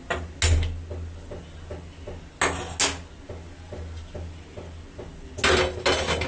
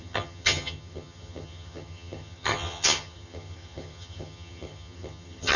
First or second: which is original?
first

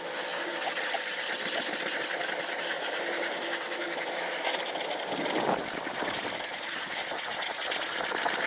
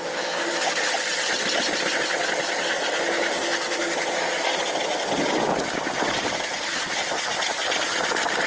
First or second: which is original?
second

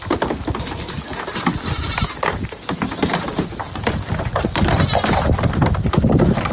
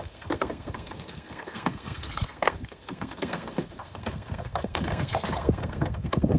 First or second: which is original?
first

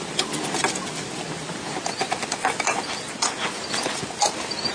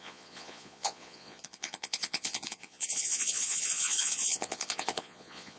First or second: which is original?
first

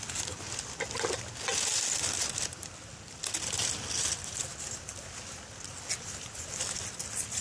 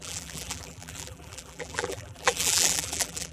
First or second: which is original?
first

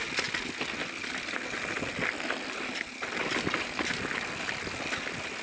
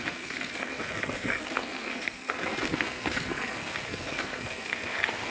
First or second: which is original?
first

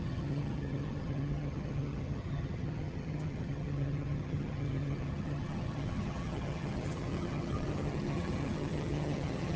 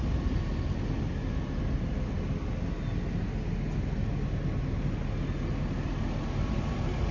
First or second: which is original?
second